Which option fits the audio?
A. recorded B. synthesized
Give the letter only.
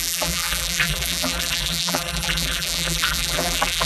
B